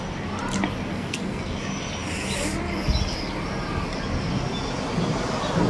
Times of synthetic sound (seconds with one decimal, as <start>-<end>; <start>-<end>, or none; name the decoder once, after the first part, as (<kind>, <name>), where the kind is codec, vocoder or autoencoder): 0.9-1.6 (codec, SNAC)